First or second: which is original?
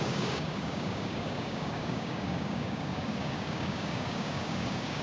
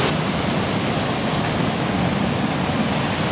second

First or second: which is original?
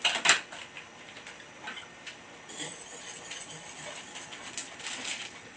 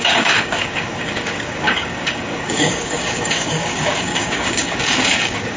first